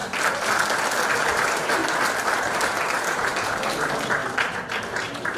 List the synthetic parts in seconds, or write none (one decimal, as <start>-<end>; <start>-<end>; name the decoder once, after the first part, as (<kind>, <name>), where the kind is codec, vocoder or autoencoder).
1.3-1.8 (vocoder, BigVGAN v2); 2.3-5.4